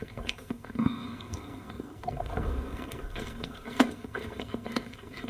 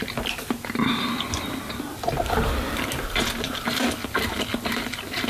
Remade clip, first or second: first